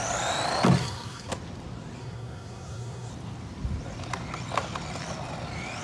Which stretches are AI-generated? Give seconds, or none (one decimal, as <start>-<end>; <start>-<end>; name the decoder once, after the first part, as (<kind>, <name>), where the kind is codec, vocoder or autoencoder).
0.8-1.3 (codec, SNAC); 2.0-3.1